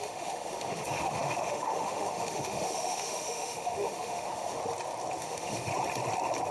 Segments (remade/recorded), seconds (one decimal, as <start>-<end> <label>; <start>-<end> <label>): 0.0-4.6 remade; 4.6-5.2 recorded; 5.2-5.7 remade; 5.7-6.5 recorded